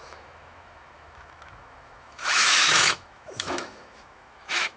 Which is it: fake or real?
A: fake